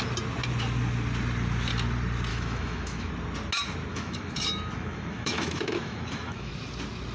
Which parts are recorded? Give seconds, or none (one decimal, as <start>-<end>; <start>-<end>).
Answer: 0.0-2.3; 3.1-3.9; 6.5-7.1